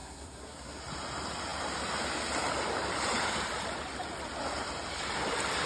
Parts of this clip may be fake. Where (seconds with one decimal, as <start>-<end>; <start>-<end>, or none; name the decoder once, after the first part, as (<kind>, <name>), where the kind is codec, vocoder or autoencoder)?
0.0-0.8 (codec, SNAC)